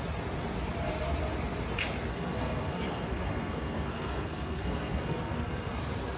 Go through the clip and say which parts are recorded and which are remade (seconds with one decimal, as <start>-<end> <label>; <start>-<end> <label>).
0.0-2.1 recorded; 2.1-5.8 remade; 5.8-6.2 recorded